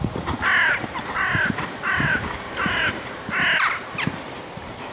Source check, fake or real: real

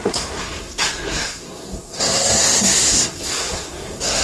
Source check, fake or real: fake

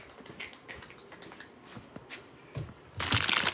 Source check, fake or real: real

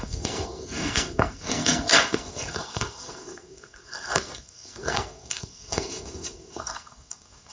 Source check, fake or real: fake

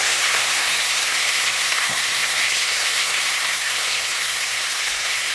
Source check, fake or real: fake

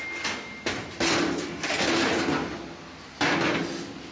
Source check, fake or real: real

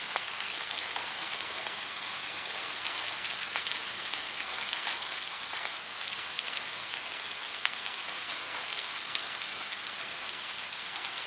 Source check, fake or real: fake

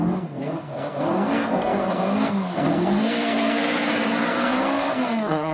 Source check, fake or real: fake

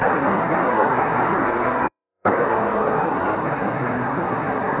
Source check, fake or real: fake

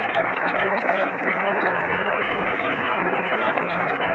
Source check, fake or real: fake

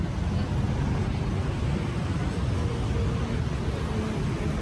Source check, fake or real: real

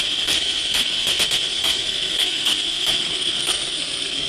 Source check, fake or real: fake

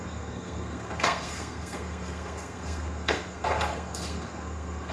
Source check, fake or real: fake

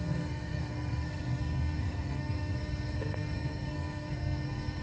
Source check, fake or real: fake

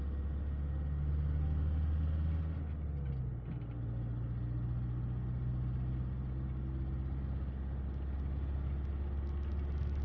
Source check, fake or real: real